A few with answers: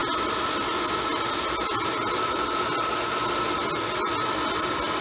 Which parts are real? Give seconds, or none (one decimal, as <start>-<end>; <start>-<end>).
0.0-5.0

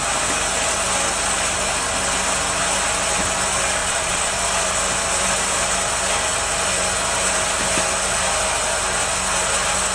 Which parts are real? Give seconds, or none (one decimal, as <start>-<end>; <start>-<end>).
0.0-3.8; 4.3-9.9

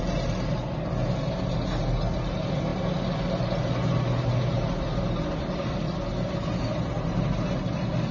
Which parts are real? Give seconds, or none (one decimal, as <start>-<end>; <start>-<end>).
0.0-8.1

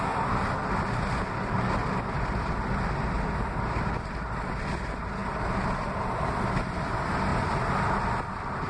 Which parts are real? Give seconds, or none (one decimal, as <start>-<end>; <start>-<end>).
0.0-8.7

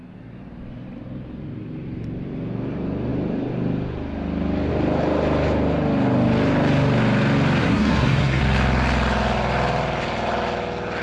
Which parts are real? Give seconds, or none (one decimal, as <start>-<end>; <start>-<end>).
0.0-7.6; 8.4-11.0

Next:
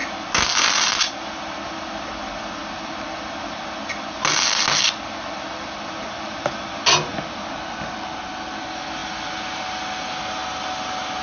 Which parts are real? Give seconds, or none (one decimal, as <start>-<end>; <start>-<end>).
0.0-11.2

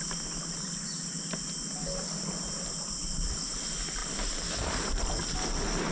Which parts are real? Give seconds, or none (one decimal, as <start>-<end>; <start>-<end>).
0.0-4.0; 5.1-5.9